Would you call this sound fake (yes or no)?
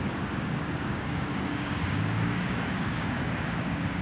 yes